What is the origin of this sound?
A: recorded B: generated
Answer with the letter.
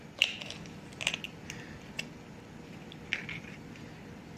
A